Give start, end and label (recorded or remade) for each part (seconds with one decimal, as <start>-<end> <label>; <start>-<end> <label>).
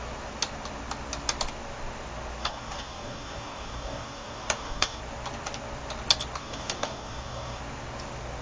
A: 0.0-2.4 recorded; 2.4-5.0 remade; 5.0-6.4 recorded; 6.4-7.6 remade; 7.6-8.4 recorded